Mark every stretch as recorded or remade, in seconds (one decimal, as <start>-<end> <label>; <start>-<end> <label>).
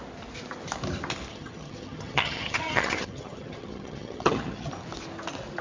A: 0.0-1.3 recorded; 1.3-4.7 remade; 4.7-5.6 recorded